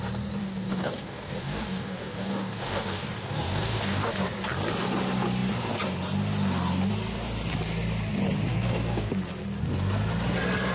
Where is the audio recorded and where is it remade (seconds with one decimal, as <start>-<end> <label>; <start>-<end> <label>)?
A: 0.0-0.4 recorded; 0.4-4.1 remade; 4.1-8.5 recorded; 8.5-9.1 remade; 9.1-10.7 recorded